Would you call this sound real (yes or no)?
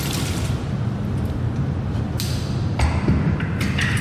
yes